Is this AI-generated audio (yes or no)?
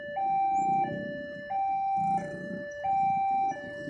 no